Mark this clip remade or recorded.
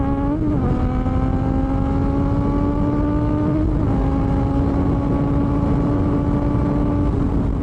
recorded